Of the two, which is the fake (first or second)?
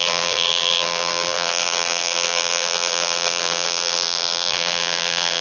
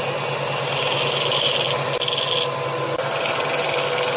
first